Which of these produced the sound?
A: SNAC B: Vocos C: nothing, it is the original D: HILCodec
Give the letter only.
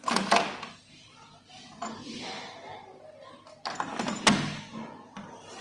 C